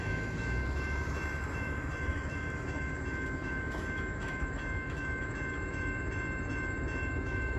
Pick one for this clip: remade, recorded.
remade